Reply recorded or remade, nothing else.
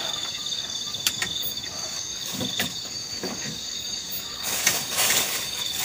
remade